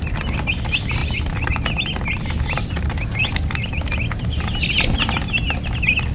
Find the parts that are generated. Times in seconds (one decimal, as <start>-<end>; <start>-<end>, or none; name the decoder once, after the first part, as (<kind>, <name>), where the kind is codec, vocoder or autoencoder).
none